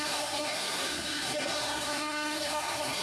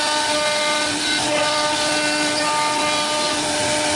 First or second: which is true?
second